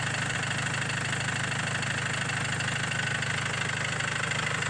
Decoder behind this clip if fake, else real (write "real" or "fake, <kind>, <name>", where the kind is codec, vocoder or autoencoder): real